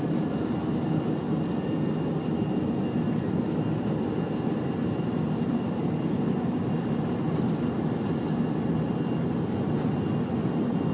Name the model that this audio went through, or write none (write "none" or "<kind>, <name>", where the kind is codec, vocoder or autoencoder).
none